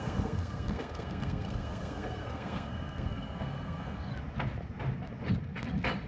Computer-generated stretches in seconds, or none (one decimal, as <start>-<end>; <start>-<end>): 0.0-4.1